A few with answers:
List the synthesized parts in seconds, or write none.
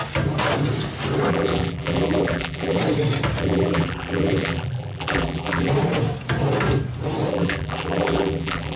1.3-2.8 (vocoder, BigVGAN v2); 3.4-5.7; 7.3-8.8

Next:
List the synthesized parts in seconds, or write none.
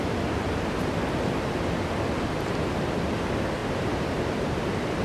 3.6-4.2 (vocoder, BigVGAN v2)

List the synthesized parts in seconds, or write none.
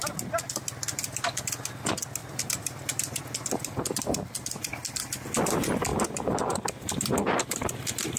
2.2-3.2 (vocoder, BigVGAN v2); 5.9-7.7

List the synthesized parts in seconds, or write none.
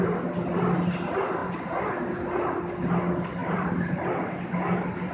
3.4-4.0 (vocoder, BigVGAN v2)